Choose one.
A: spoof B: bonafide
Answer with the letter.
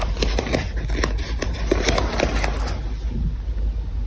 B